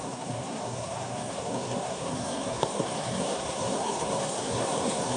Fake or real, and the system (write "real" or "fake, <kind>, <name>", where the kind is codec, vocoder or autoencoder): fake, codec, SNAC